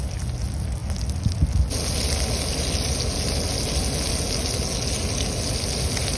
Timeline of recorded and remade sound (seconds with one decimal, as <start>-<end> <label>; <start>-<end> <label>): 0.0-6.2 recorded